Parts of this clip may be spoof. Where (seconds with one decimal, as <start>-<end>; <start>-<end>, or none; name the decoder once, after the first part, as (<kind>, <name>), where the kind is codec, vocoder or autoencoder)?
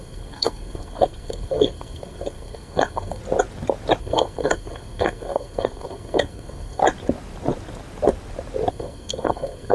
0.0-3.2 (codec, SNAC); 4.0-6.8; 8.7-9.7